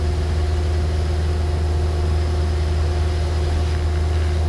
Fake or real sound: real